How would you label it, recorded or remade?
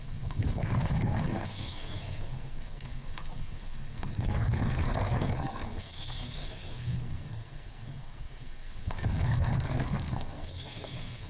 remade